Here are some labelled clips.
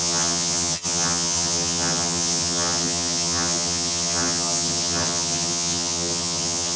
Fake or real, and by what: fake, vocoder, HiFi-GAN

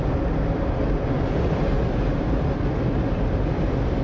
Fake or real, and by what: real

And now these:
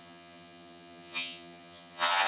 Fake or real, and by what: fake, vocoder, HiFi-GAN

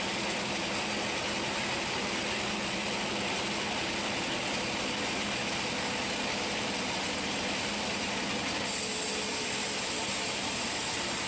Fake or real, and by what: real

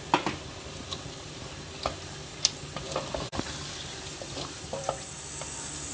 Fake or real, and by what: real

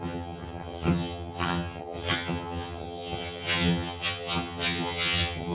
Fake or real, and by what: fake, vocoder, HiFi-GAN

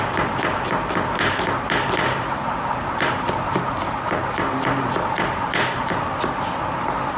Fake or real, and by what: real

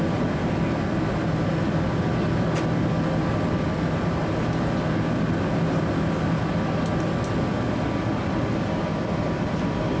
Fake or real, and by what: real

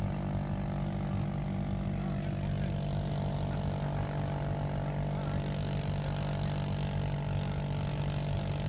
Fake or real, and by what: real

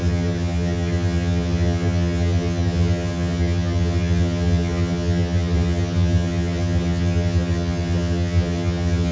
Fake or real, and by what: fake, vocoder, HiFi-GAN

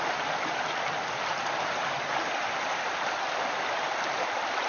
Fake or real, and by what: real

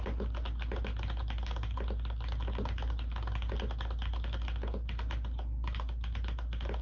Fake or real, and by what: real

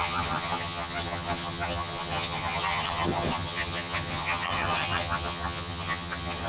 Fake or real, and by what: fake, vocoder, HiFi-GAN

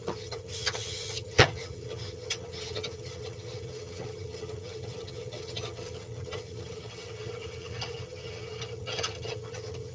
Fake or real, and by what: fake, vocoder, HiFi-GAN